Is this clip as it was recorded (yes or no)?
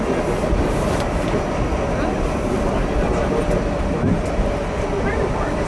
yes